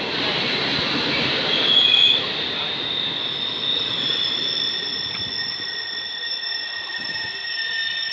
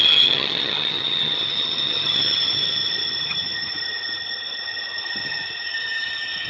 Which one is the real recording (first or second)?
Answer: first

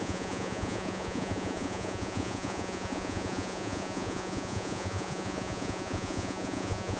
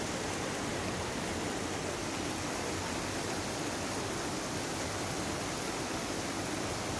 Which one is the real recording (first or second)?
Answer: second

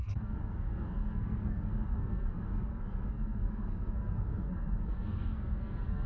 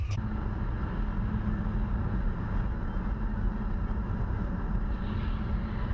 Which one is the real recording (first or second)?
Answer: second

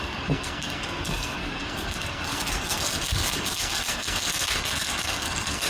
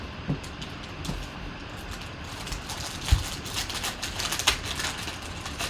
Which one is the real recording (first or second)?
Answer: second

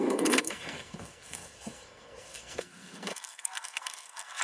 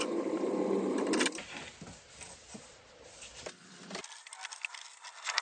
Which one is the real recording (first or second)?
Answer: second